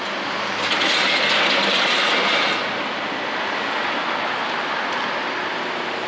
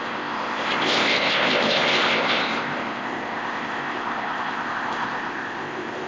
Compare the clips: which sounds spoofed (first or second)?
second